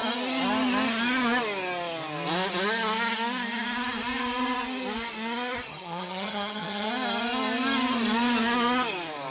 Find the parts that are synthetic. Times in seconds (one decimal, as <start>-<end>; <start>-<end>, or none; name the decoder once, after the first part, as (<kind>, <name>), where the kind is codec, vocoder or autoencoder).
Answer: 5.7-6.9 (vocoder, HiFi-GAN)

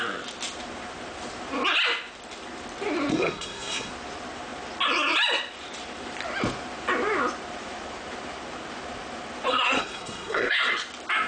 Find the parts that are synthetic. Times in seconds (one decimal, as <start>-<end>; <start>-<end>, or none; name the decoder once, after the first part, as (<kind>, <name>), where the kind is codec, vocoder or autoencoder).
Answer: 3.1-3.9 (codec, SNAC); 9.5-10.7

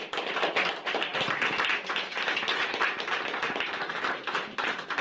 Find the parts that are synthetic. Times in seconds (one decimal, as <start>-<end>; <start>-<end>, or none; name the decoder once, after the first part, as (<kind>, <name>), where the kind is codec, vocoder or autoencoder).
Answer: none